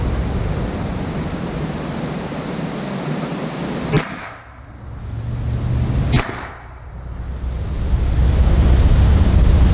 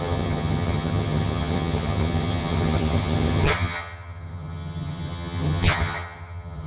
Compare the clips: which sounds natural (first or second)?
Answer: first